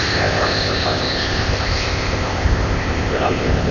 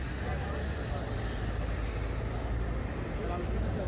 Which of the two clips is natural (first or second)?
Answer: second